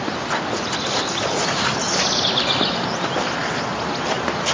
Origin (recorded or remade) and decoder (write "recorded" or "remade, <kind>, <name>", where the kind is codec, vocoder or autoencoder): recorded